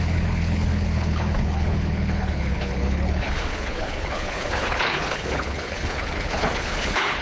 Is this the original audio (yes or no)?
no